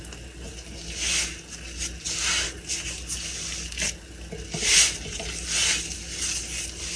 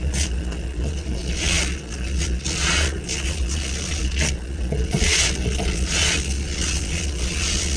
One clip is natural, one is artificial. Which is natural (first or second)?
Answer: first